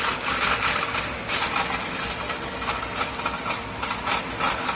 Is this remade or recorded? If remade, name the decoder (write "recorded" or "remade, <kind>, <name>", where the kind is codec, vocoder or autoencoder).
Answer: recorded